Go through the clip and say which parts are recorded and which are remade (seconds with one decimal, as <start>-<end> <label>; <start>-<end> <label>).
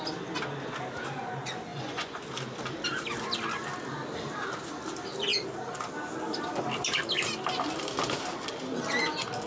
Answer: 0.0-1.7 recorded; 1.7-2.2 remade; 2.2-9.5 recorded